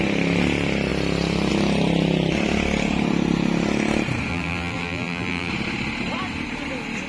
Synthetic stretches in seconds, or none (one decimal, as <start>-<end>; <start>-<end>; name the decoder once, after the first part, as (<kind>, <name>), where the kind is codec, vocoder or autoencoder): 4.3-5.5 (vocoder, BigVGAN v2)